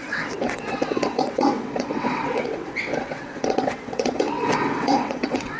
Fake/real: fake